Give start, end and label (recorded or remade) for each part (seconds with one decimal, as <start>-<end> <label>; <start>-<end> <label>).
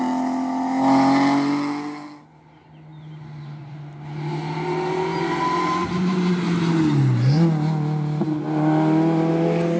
0.0-9.8 recorded